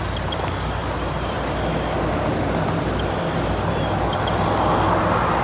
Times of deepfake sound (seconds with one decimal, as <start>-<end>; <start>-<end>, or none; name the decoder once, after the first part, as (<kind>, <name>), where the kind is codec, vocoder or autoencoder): none